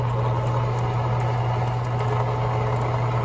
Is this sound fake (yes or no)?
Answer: no